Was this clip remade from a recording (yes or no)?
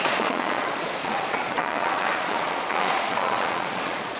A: yes